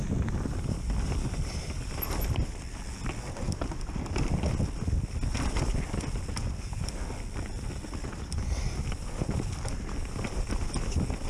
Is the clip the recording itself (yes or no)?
yes